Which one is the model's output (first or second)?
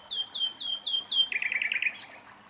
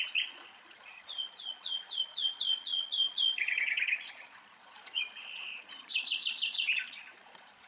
second